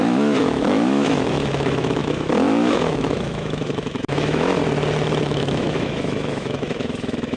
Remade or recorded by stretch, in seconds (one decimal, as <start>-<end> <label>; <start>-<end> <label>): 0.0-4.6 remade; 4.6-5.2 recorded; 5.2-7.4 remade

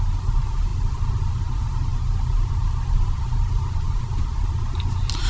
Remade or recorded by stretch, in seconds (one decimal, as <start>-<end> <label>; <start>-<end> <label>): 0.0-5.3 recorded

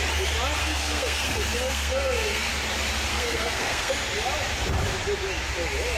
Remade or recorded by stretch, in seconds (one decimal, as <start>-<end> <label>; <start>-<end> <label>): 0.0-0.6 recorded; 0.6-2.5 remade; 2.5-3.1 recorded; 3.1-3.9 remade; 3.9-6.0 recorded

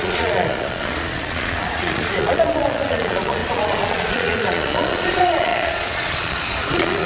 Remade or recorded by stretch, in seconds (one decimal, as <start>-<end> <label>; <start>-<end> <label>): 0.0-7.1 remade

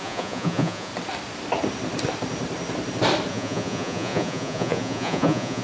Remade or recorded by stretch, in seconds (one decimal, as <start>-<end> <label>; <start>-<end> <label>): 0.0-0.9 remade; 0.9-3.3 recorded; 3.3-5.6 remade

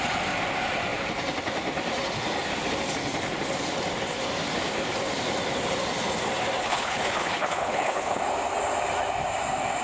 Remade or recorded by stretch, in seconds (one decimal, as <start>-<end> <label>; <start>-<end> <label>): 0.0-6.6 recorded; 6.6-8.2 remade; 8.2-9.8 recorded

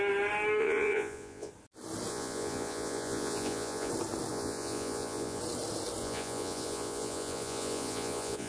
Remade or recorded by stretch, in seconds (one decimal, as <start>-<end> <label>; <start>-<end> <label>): 0.0-0.6 recorded; 0.6-1.5 remade; 1.5-2.1 recorded; 2.1-3.9 remade; 3.9-4.3 recorded; 4.3-5.4 remade; 5.4-6.0 recorded; 6.0-8.5 remade